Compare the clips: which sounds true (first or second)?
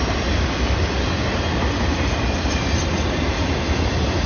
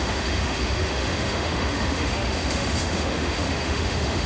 first